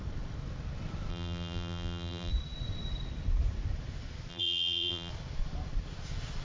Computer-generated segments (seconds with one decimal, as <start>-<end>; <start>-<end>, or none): 1.1-2.3; 4.3-5.1